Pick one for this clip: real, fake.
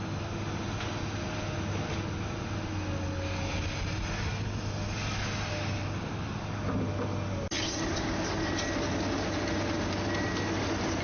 real